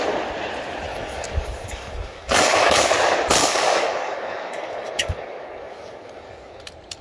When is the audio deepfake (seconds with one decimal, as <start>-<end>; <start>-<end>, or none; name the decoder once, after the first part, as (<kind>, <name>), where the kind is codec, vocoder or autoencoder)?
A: 0.9-2.8 (codec, DAC); 3.4-6.6